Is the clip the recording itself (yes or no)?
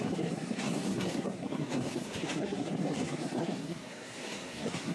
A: no